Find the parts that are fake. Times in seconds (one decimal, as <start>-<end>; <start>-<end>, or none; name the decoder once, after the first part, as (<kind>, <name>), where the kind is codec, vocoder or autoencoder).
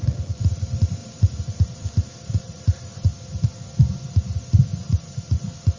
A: 0.0-3.1 (vocoder, BigVGAN v2); 3.9-5.8